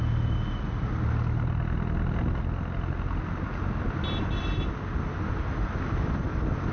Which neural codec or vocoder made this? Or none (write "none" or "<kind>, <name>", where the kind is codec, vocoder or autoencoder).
none